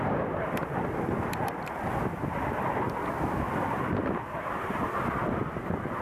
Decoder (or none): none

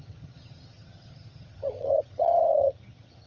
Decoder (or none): vocoder, HiFi-GAN